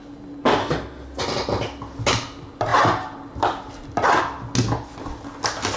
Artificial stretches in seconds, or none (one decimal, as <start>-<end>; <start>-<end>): 0.6-1.2